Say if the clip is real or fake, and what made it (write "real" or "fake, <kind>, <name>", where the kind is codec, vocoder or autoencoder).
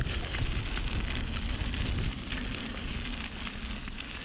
real